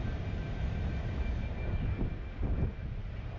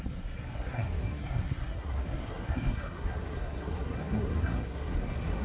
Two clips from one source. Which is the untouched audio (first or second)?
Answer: first